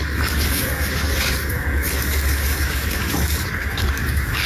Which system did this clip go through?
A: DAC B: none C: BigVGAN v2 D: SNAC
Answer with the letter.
A